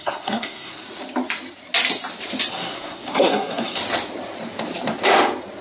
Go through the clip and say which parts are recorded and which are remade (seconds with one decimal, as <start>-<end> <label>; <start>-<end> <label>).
0.0-0.8 remade; 0.8-2.5 recorded; 2.5-3.8 remade; 3.8-5.6 recorded